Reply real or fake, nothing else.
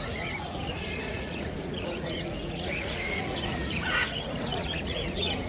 fake